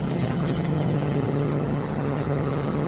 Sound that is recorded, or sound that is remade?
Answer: remade